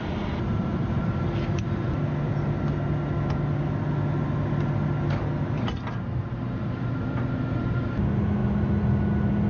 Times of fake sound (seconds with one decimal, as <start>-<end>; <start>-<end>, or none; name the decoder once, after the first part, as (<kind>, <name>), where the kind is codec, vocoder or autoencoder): none